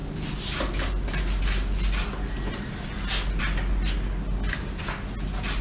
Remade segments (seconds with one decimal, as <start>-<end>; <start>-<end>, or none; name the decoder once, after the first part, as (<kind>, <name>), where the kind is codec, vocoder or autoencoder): none